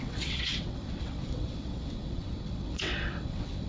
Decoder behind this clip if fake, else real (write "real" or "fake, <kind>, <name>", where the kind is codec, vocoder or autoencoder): fake, vocoder, WaveNeXt